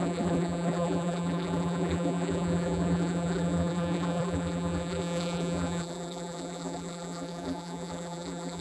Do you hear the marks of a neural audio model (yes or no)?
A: yes